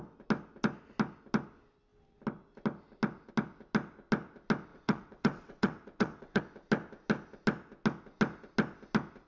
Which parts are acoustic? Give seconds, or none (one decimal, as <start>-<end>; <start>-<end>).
0.0-4.7; 6.4-9.3